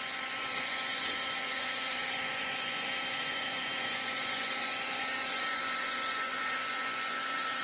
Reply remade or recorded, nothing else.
remade